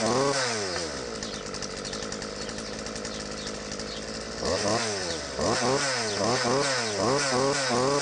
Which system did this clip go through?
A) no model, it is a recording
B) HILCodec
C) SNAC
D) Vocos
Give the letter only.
A